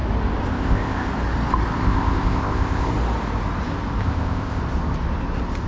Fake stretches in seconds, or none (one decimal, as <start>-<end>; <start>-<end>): 0.5-1.1; 1.8-2.9; 4.0-4.6